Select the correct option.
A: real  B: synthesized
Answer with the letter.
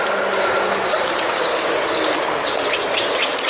B